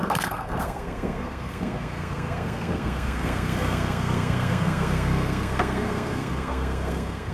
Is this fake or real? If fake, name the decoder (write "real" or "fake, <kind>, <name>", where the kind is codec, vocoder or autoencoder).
fake, codec, SNAC